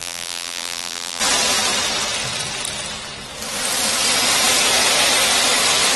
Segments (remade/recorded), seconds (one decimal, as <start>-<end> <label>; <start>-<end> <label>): 0.0-1.2 remade; 1.2-6.0 recorded

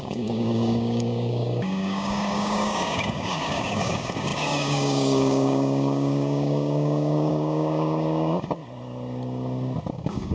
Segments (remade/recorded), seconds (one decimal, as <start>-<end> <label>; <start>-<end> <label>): 0.0-8.6 remade; 8.6-9.9 recorded; 9.9-10.3 remade

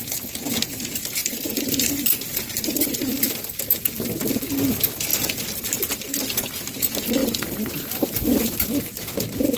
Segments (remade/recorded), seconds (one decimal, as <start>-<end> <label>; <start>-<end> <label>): 0.0-1.2 recorded; 1.2-4.1 remade; 4.1-9.6 recorded

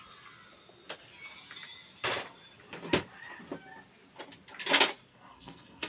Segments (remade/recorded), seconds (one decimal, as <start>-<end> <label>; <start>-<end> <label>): 0.0-5.1 recorded; 5.1-5.9 remade